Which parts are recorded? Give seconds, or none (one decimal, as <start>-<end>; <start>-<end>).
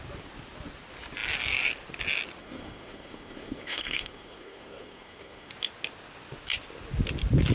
0.0-2.4; 5.5-7.5